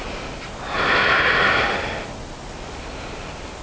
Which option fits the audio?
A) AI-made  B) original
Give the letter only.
B